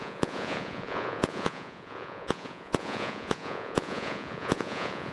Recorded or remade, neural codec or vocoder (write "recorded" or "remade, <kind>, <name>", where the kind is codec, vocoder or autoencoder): remade, vocoder, Vocos